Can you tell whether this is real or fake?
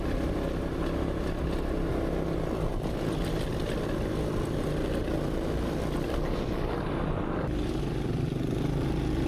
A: real